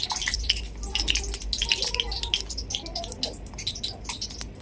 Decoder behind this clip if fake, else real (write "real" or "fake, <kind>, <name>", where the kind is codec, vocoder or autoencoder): real